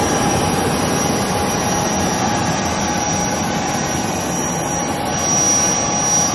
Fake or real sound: real